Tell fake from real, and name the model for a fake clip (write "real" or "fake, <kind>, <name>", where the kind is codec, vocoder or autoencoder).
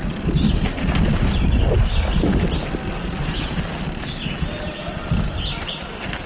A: real